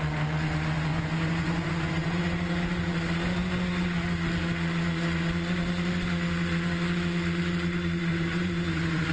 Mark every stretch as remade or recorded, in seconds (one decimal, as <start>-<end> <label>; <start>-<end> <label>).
0.0-0.9 recorded; 0.9-2.2 remade; 2.2-8.1 recorded; 8.1-9.1 remade